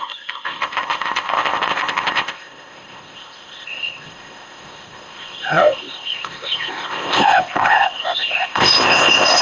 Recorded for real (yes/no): no